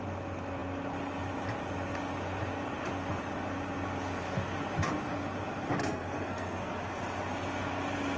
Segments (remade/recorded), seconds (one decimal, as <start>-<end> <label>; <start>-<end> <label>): 0.0-5.8 recorded; 5.8-6.7 remade; 6.7-8.2 recorded